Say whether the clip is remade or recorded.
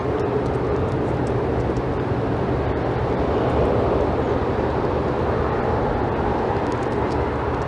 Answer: recorded